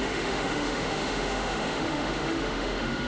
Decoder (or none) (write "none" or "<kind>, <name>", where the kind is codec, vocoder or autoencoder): autoencoder, DAC-VAE